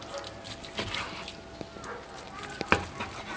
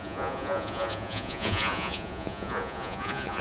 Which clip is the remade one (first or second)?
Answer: second